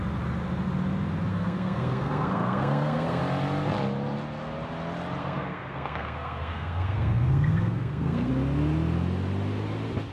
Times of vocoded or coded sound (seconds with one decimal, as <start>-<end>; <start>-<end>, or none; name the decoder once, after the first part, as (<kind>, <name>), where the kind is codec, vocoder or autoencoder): 1.3-3.2 (codec, SNAC); 5.2-8.3